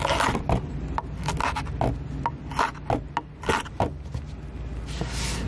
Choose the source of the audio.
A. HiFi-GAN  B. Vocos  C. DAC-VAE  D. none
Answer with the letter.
D